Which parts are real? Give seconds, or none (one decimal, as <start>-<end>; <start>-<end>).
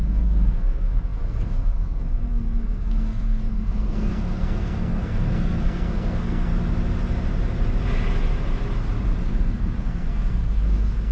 6.5-9.3